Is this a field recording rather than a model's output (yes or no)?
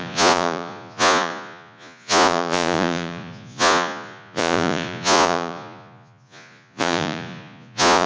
no